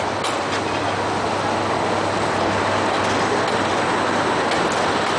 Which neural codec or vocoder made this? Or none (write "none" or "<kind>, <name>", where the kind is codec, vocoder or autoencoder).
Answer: none